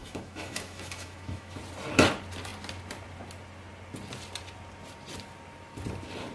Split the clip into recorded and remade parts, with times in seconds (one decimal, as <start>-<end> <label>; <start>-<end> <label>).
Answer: 0.0-1.6 remade; 1.6-6.3 recorded